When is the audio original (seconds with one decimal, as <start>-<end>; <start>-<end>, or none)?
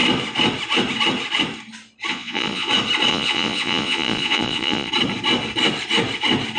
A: 0.0-2.1; 2.7-3.1; 4.9-6.6